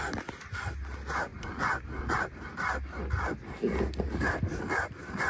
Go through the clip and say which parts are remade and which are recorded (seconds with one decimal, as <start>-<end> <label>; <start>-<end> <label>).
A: 0.0-5.3 recorded